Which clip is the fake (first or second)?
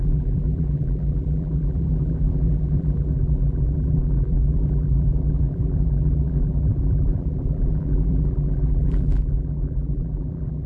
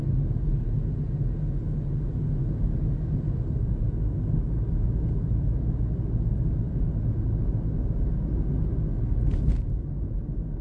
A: first